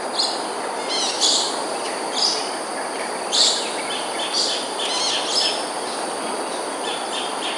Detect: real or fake real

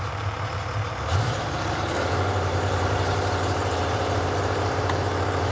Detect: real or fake fake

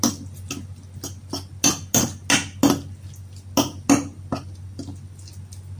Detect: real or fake real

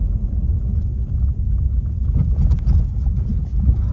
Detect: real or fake real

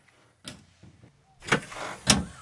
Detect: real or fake real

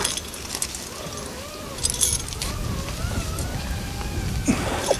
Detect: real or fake real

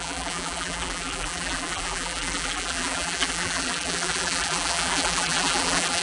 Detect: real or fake fake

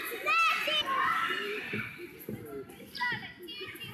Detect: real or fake real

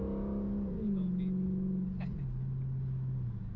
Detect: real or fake real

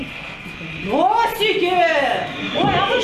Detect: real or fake real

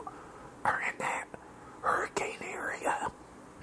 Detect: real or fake real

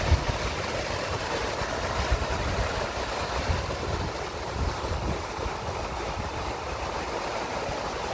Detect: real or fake real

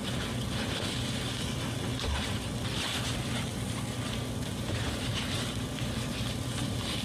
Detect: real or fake fake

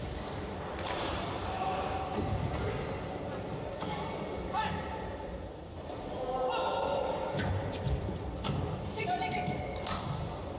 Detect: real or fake fake